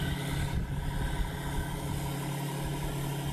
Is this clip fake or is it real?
real